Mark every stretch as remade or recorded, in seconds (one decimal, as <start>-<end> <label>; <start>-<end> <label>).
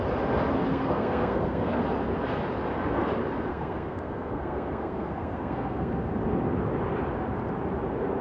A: 0.0-0.7 recorded; 0.7-1.8 remade; 1.8-3.5 recorded; 3.5-6.1 remade; 6.1-8.2 recorded